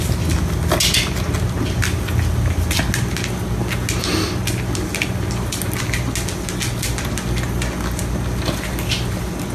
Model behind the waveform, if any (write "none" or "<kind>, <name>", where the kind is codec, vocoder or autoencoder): none